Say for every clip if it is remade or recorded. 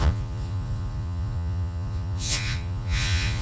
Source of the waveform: remade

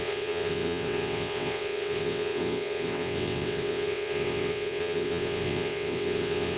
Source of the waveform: remade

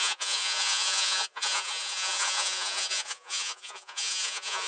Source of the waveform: remade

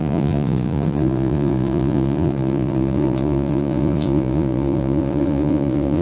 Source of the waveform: remade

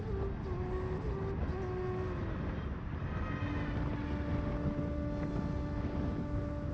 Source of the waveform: recorded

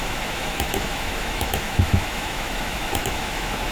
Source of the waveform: remade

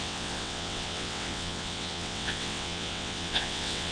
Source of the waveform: remade